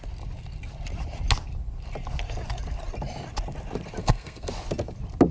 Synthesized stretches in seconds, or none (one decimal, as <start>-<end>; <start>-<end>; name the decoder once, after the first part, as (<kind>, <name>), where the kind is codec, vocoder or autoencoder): 4.0-4.5 (codec, SNAC)